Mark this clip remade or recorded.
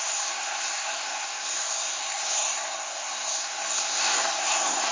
remade